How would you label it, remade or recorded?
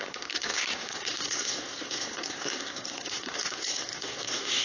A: remade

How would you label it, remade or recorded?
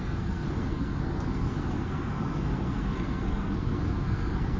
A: remade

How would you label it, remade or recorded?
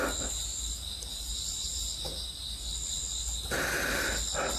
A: recorded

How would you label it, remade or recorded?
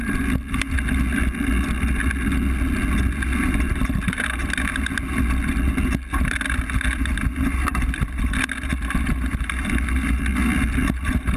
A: recorded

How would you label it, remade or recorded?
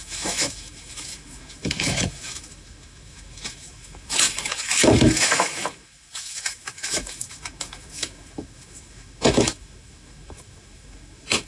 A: remade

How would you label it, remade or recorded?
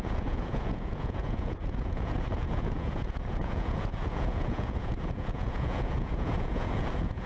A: remade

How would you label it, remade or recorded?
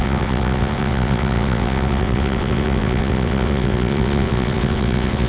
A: remade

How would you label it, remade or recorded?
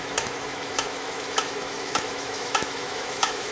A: remade